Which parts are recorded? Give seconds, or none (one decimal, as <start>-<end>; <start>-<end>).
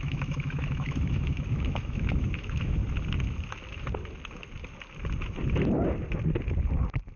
2.8-7.2